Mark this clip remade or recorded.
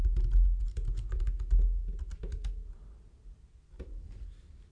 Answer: recorded